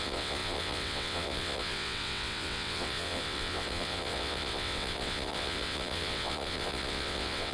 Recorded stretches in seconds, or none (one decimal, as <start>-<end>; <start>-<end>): none